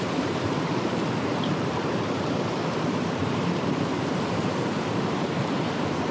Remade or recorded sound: remade